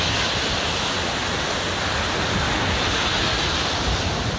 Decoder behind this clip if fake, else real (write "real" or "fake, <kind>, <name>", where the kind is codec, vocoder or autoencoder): real